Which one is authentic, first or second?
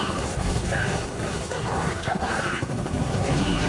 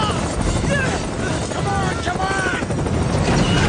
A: second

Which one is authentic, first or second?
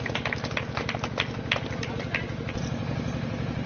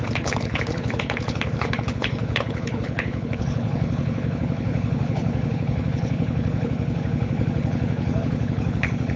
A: first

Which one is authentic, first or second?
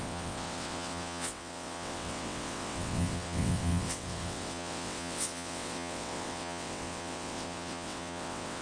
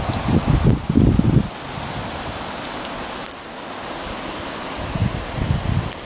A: second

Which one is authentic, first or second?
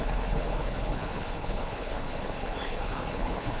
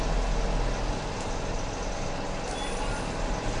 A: second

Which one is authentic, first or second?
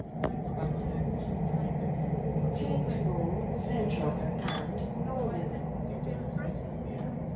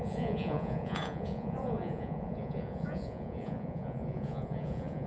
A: first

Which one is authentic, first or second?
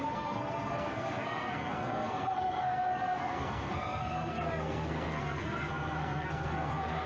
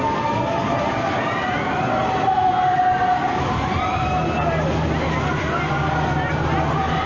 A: second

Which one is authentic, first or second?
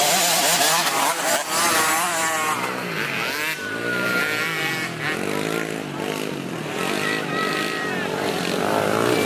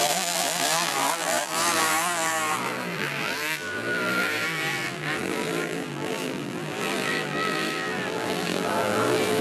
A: first